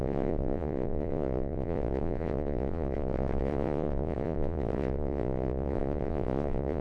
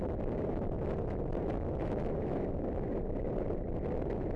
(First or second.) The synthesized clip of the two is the first